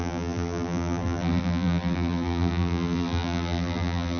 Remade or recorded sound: remade